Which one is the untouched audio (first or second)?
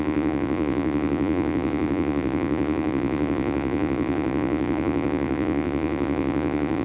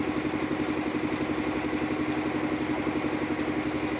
second